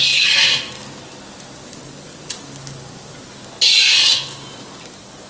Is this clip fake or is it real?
real